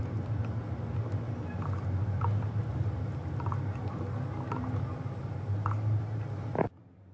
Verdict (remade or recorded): recorded